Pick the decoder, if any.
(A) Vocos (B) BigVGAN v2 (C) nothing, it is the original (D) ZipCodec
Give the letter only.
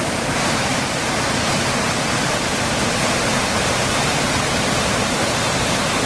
B